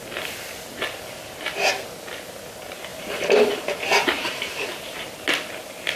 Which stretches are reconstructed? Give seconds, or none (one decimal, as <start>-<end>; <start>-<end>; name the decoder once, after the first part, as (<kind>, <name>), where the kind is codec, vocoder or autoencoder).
2.9-4.5 (vocoder, BigVGAN v2)